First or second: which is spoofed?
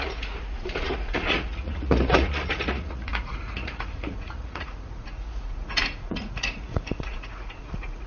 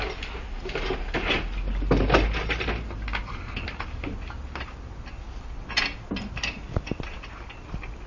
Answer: first